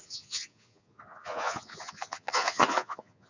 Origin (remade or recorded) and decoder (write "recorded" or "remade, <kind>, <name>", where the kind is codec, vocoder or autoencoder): remade, vocoder, Vocos